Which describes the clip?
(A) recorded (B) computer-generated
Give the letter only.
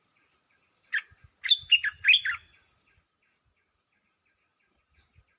A